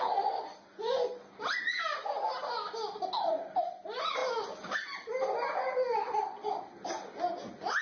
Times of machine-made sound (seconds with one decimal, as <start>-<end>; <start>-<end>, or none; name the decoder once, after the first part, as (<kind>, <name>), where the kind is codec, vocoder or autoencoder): none

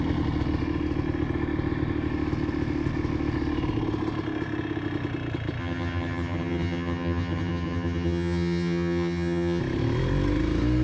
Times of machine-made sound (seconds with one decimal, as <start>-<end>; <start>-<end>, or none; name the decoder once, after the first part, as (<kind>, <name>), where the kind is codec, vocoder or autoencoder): 5.6-9.6 (vocoder, HiFi-GAN)

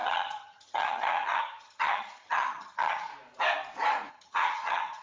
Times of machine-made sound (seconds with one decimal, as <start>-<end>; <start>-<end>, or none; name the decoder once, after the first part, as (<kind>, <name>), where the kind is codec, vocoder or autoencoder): 0.0-3.1 (vocoder, HiFi-GAN); 4.1-5.0